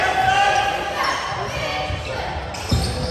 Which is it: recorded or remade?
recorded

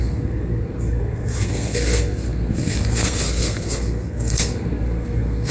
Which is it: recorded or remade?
remade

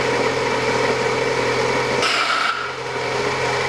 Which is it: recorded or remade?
recorded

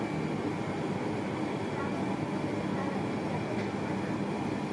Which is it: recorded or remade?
recorded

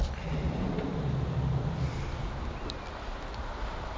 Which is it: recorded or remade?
recorded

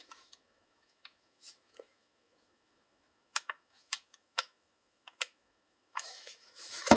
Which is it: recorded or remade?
remade